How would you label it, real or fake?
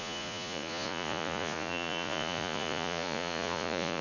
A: fake